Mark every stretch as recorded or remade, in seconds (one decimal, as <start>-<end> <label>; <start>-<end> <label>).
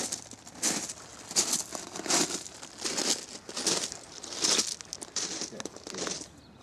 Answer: 0.0-6.6 recorded